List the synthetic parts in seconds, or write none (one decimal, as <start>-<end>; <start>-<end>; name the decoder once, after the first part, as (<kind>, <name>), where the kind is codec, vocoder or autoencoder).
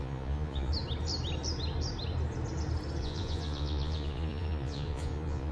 0.0-0.7 (vocoder, Vocos); 3.0-5.5